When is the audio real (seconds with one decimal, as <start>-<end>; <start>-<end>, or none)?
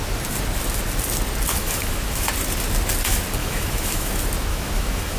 0.0-1.6; 2.3-3.4; 4.1-4.5